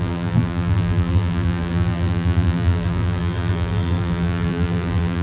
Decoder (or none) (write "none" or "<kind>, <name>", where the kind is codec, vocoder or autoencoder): vocoder, BigVGAN v2